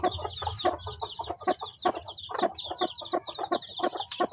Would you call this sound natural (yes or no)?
yes